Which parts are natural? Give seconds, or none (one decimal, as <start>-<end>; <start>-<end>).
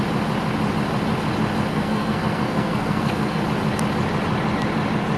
0.0-1.7; 3.4-5.2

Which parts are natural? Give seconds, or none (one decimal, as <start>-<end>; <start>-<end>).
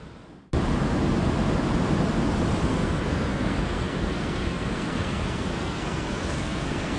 0.0-2.7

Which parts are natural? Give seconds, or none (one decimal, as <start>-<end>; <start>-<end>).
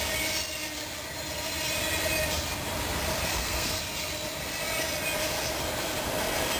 0.0-3.3; 3.8-6.6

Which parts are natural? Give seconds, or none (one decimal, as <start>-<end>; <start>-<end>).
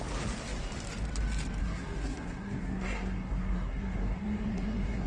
0.0-1.6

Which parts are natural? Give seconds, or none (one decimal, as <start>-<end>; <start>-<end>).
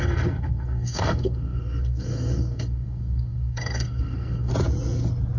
4.5-5.4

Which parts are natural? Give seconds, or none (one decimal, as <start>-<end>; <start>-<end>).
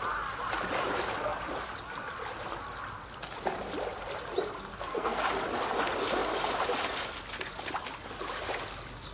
0.0-4.7; 5.2-9.1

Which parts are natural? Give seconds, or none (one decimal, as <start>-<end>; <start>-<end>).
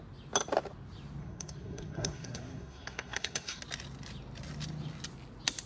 0.0-1.2; 3.6-5.7